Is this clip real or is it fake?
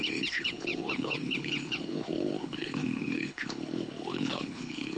fake